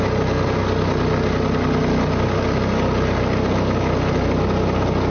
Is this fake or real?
real